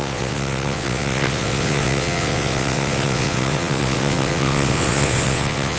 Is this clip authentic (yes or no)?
no